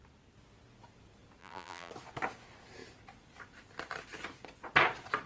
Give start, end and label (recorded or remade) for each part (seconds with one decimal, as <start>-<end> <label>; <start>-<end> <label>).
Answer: 0.0-1.4 recorded; 1.4-1.9 remade; 1.9-5.3 recorded